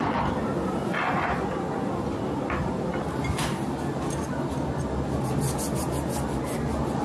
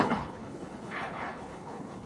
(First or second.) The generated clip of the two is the second